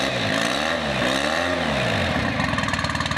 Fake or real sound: real